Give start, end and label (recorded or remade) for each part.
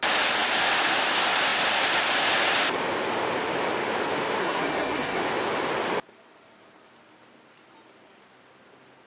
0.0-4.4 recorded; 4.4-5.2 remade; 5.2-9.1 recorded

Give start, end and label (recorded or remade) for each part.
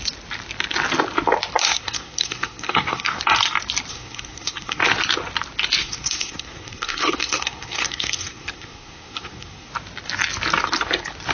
0.0-1.6 recorded; 1.6-3.2 remade; 3.2-3.9 recorded; 3.9-4.8 remade; 4.8-5.8 recorded; 5.8-9.7 remade; 9.7-11.3 recorded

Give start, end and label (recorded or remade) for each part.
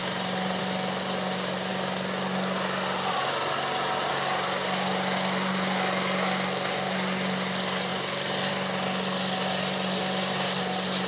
0.0-11.1 recorded